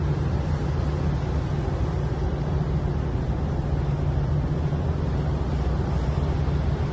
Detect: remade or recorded recorded